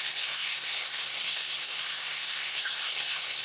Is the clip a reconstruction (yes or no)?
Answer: yes